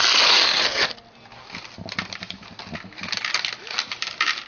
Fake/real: real